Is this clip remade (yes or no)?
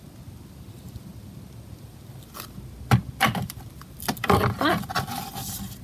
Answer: no